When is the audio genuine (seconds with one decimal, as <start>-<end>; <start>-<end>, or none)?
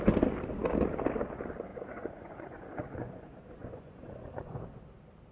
0.0-1.7; 4.6-5.3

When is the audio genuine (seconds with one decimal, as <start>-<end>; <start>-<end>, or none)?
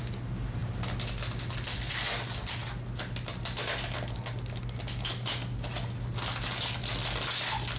0.0-7.8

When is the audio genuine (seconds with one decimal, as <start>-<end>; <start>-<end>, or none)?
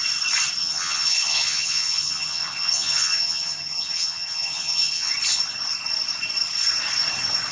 0.0-0.6; 5.1-7.5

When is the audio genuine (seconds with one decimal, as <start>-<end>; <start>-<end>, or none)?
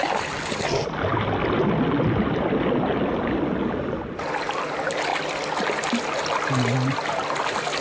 0.0-7.8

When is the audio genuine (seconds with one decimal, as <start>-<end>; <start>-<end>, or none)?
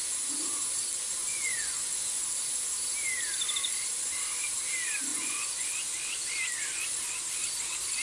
0.0-1.2; 2.2-5.1; 5.7-8.0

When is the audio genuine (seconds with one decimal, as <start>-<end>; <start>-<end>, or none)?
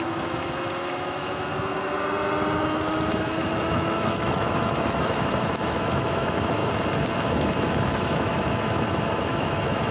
1.5-3.1; 6.6-7.3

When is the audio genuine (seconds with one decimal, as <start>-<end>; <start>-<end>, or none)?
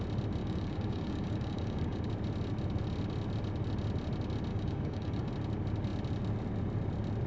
0.0-0.4; 2.1-4.5; 5.3-7.3